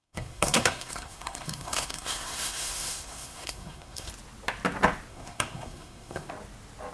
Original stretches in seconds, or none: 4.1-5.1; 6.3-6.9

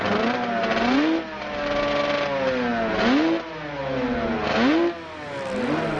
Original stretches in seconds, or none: 0.0-6.0